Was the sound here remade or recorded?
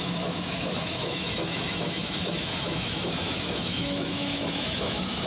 remade